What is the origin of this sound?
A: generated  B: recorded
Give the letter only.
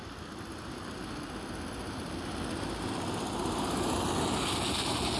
B